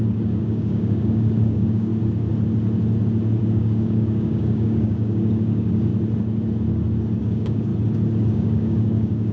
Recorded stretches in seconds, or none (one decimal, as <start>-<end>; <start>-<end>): 1.9-3.4; 5.9-7.2; 7.7-8.3